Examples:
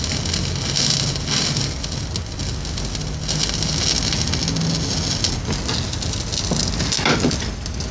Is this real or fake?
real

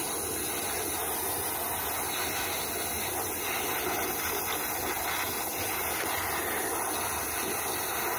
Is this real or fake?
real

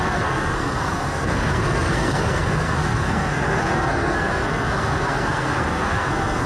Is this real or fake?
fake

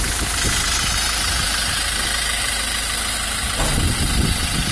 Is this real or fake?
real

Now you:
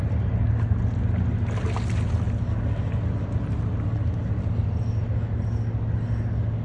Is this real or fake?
real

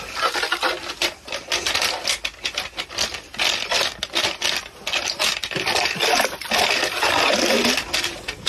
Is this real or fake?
real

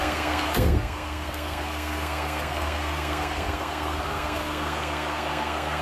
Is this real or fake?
fake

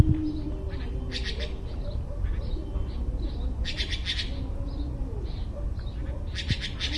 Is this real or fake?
real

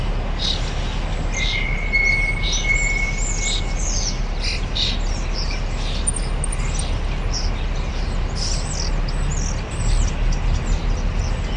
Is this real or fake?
real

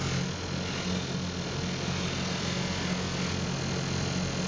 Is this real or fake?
real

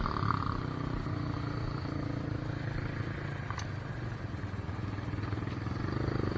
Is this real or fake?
real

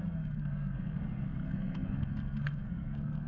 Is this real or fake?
fake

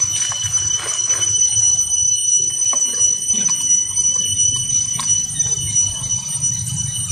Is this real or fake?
real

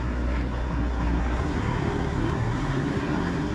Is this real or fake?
fake